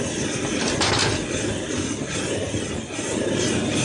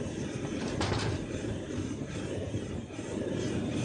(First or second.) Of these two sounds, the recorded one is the first